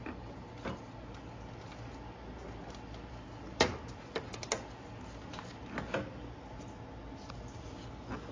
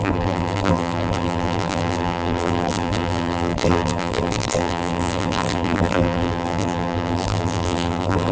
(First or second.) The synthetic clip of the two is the second